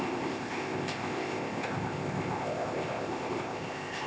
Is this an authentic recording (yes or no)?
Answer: no